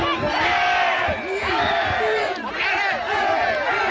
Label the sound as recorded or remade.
recorded